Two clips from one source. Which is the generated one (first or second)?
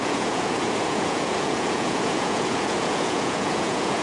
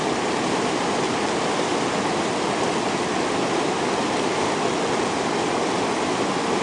first